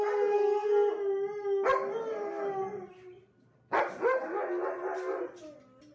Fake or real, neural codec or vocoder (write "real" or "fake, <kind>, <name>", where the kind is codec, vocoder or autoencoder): real